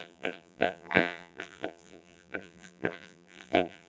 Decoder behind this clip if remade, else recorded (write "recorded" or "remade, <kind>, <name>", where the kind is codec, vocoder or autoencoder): remade, vocoder, BigVGAN v2